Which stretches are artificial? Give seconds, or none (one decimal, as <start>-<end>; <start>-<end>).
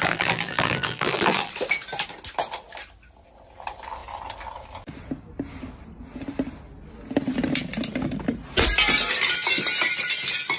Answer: 0.0-1.5